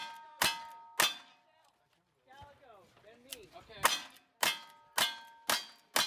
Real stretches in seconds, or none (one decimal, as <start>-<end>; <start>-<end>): 0.0-6.1